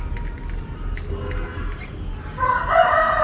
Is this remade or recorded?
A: recorded